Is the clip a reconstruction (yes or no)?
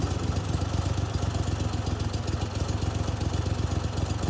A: no